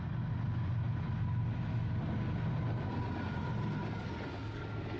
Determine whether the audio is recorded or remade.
recorded